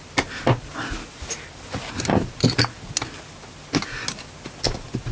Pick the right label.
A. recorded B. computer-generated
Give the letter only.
A